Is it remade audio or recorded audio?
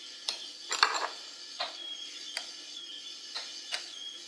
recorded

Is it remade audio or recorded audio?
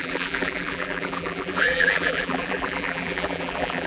remade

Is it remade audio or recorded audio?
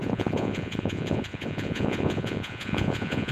remade